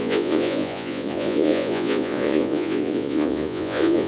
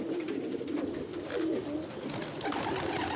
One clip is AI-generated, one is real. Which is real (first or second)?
second